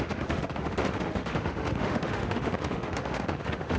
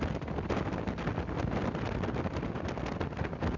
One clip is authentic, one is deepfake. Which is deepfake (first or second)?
first